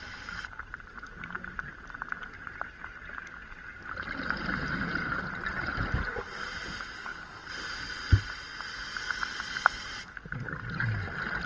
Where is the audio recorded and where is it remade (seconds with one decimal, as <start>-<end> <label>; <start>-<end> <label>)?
0.0-11.5 recorded